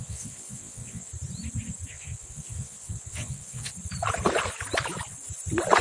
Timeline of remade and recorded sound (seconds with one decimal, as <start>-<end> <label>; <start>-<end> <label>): 0.0-1.1 remade; 1.1-1.9 recorded; 1.9-3.7 remade; 3.7-5.8 recorded